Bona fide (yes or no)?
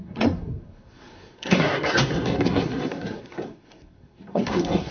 no